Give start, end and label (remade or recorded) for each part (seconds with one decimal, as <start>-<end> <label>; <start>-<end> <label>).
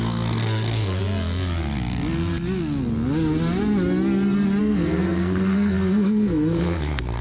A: 0.0-1.0 remade; 1.0-4.6 recorded; 4.6-7.2 remade